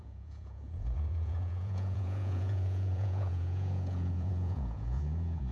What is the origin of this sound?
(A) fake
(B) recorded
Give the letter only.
A